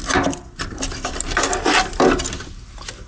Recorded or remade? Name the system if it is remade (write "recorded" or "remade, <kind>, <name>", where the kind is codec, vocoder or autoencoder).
recorded